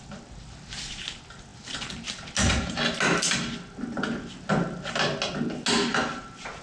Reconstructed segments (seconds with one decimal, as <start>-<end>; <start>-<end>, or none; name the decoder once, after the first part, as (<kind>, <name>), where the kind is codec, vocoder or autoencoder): none